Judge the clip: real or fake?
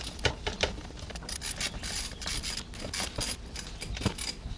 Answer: real